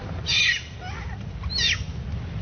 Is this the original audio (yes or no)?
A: yes